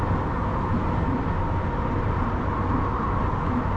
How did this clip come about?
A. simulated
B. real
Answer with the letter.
B